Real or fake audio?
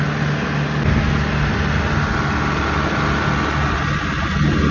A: real